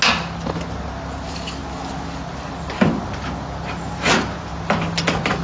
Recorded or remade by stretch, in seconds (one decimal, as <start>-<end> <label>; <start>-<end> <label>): 0.0-5.4 recorded